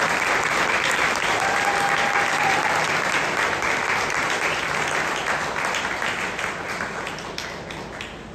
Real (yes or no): yes